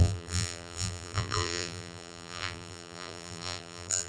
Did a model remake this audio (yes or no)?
yes